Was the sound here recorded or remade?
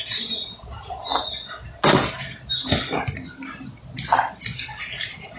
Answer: recorded